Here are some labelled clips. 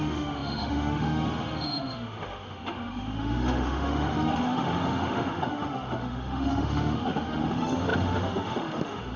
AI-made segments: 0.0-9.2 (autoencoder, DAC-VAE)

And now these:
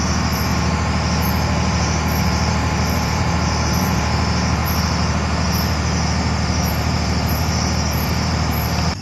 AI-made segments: 0.0-0.5 (vocoder, BigVGAN v2); 2.2-4.6; 6.7-9.0

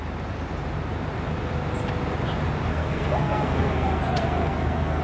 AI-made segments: 2.7-5.0 (codec, SNAC)

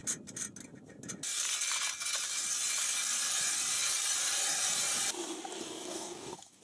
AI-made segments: 5.6-6.6 (codec, DAC)